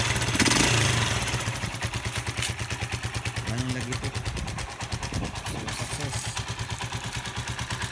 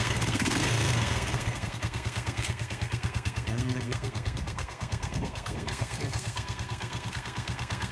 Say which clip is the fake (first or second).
second